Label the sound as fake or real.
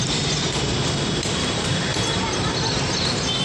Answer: fake